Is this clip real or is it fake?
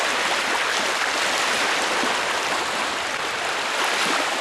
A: real